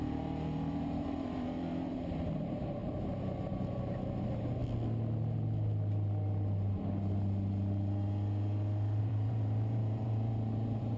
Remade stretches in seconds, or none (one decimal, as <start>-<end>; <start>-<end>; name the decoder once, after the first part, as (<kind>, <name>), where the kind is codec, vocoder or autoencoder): 0.0-2.8 (vocoder, BigVGAN v2); 3.5-4.6; 9.0-11.0

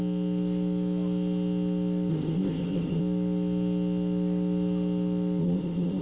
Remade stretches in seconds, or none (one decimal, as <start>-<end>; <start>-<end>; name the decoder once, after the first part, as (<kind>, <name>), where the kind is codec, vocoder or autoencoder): 2.1-3.0 (codec, ZipCodec); 5.4-6.0

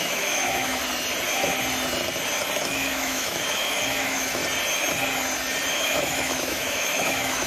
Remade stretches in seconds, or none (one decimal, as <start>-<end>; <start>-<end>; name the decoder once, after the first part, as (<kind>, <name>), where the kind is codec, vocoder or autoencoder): 0.0-0.8 (autoencoder, DAC-VAE); 2.6-4.4; 5.7-7.5